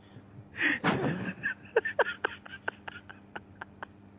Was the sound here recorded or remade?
recorded